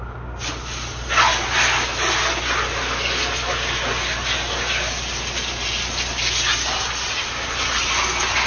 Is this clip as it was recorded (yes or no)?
yes